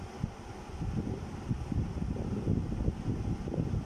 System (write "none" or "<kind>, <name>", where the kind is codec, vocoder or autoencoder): none